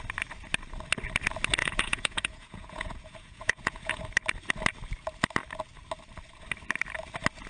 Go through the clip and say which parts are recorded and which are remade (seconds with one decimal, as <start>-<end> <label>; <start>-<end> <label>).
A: 0.0-1.6 recorded; 1.6-4.0 remade; 4.0-7.5 recorded